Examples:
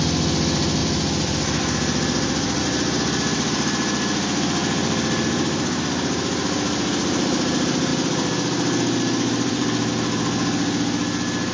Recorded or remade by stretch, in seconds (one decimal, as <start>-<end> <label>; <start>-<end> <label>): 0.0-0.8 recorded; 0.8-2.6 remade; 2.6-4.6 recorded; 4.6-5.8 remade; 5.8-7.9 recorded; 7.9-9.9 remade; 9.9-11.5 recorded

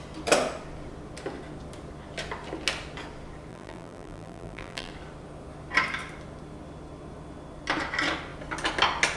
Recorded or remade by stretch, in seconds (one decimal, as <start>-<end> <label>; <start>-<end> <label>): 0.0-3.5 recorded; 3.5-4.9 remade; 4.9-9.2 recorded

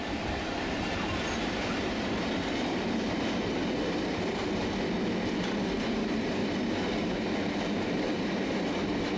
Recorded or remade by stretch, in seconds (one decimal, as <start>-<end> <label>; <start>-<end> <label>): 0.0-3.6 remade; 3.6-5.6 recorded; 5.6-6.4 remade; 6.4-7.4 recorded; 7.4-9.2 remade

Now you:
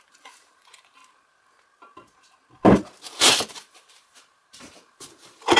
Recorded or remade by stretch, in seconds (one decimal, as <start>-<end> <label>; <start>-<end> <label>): 0.0-1.0 remade; 1.0-3.1 recorded; 3.1-5.6 remade

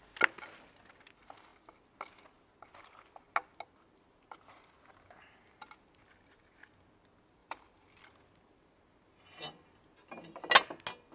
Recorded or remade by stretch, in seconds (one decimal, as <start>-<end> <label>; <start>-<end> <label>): 0.0-7.4 recorded; 7.4-8.0 remade; 8.0-11.1 recorded

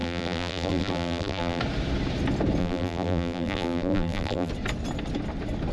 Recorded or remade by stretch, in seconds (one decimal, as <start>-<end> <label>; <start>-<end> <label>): 0.0-1.6 remade; 1.6-2.6 recorded; 2.6-4.5 remade; 4.5-5.7 recorded